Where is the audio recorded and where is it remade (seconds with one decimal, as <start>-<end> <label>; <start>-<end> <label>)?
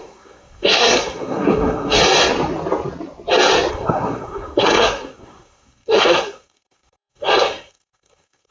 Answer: 0.0-2.0 remade; 2.0-3.7 recorded; 3.7-8.5 remade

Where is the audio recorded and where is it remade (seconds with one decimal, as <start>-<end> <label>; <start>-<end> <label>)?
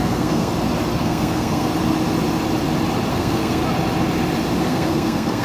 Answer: 0.0-0.5 remade; 0.5-1.0 recorded; 1.0-1.7 remade; 1.7-3.1 recorded; 3.1-3.6 remade; 3.6-4.6 recorded; 4.6-5.4 remade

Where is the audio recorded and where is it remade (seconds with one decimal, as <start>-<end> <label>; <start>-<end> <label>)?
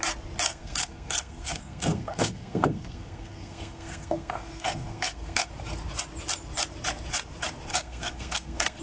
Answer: 0.0-0.5 recorded; 0.5-5.5 remade; 5.5-7.7 recorded; 7.7-8.8 remade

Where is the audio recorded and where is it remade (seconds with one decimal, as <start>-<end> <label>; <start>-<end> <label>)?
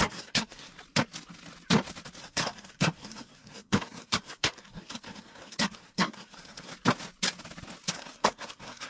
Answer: 0.0-0.7 remade; 0.7-2.2 recorded; 2.2-6.7 remade; 6.7-7.9 recorded; 7.9-8.9 remade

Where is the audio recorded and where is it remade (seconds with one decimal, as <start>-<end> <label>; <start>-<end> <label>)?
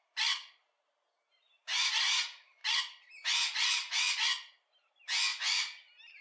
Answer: 0.0-6.2 recorded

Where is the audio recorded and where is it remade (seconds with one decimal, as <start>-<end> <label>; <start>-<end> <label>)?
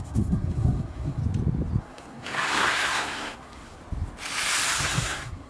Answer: 0.0-1.2 remade; 1.2-1.8 recorded; 1.8-3.8 remade; 3.8-4.8 recorded; 4.8-5.5 remade